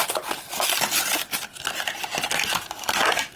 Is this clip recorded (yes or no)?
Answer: yes